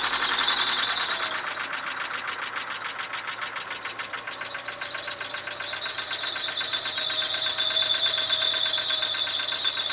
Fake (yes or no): no